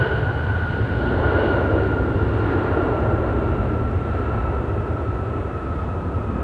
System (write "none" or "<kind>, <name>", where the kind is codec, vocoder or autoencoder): none